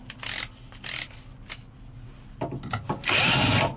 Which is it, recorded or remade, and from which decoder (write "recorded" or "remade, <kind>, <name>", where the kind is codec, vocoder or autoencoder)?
recorded